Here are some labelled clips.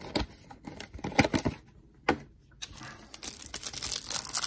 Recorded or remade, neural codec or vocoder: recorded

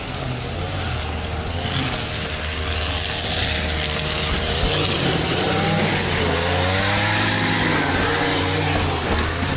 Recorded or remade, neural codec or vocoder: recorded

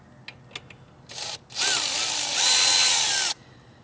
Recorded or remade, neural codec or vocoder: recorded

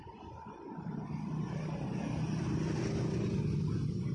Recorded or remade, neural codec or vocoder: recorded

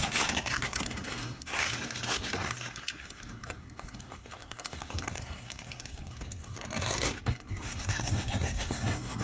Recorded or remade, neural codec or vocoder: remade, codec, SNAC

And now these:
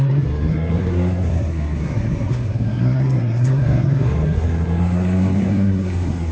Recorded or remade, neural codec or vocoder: remade, codec, SNAC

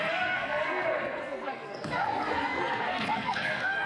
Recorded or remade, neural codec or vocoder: remade, codec, SNAC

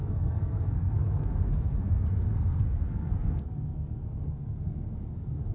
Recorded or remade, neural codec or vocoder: remade, codec, SNAC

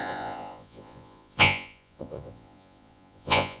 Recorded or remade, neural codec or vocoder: remade, vocoder, Vocos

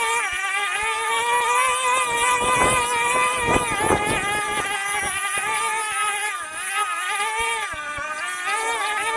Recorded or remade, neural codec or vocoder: recorded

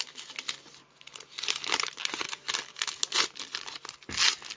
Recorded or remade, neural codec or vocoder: recorded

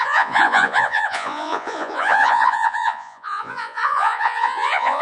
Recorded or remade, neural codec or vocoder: remade, vocoder, Vocos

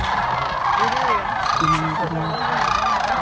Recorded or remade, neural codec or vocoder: recorded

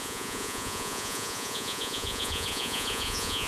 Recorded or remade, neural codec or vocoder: remade, vocoder, Vocos